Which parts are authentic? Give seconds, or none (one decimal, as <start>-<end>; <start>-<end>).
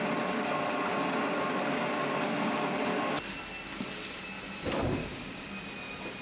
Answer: 0.0-5.0; 5.5-6.2